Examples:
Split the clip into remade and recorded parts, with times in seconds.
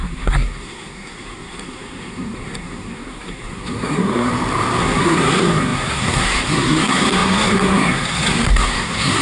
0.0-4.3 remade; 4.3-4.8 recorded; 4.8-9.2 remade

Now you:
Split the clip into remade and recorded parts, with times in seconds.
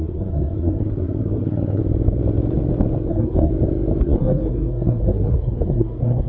0.0-1.8 remade; 1.8-3.1 recorded; 3.1-3.5 remade; 3.5-4.0 recorded; 4.0-6.3 remade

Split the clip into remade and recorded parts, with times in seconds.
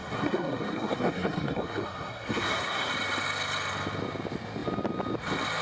0.0-2.9 remade; 2.9-5.6 recorded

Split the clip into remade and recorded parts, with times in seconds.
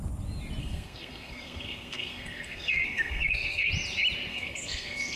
0.0-0.6 recorded; 0.6-3.7 remade; 3.7-4.3 recorded; 4.3-5.2 remade